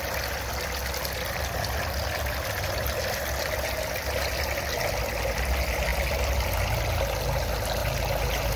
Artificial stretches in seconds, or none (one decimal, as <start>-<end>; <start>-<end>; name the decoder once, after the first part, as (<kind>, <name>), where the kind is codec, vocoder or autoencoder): none